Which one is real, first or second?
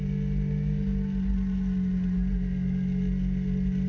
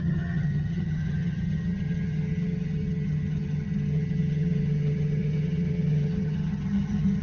first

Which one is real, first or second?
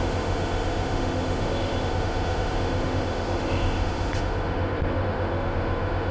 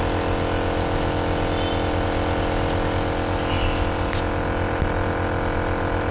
second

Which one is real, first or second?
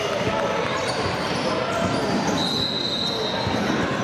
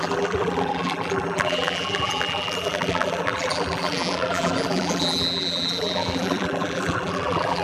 first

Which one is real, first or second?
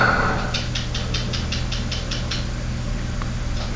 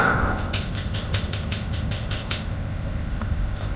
first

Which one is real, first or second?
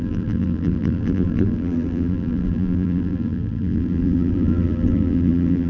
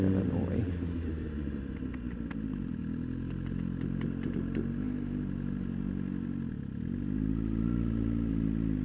second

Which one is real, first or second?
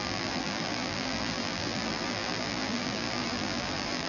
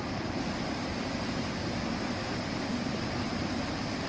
second